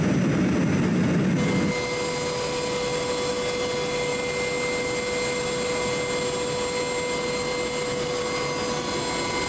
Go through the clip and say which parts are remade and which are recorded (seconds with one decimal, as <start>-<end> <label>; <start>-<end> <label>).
0.0-9.5 recorded